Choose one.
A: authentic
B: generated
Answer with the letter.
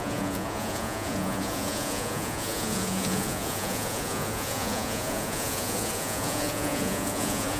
B